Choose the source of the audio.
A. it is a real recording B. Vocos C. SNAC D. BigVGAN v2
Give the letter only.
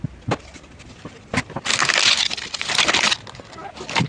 A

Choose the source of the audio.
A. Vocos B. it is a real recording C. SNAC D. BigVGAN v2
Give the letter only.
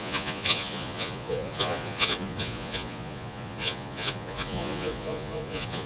A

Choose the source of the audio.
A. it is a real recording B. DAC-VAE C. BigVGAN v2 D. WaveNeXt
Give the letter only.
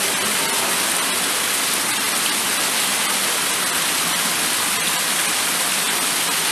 A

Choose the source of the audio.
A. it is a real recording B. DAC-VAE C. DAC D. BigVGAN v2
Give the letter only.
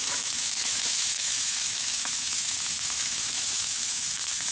B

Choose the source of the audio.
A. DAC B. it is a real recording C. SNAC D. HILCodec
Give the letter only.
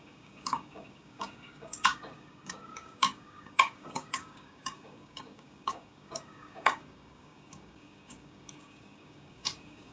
A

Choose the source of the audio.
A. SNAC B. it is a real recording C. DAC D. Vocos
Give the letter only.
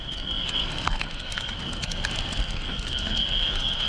A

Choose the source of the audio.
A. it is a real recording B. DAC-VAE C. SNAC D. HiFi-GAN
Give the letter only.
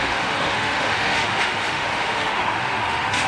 B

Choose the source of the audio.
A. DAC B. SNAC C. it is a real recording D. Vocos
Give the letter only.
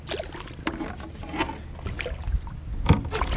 C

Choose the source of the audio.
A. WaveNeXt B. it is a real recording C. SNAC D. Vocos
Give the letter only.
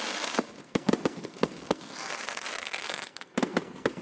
C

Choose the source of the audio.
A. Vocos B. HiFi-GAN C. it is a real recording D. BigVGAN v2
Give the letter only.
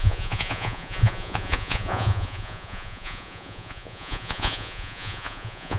A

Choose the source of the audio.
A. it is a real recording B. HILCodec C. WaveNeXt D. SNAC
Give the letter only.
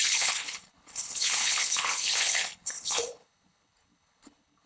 B